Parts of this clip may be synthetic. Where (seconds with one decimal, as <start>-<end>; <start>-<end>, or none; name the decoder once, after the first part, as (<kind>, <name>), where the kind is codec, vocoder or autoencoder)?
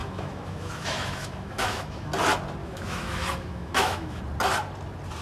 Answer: 0.0-2.1 (autoencoder, DAC-VAE); 2.6-4.2